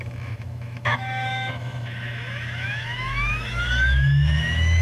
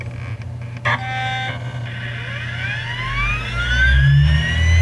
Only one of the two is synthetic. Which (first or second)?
first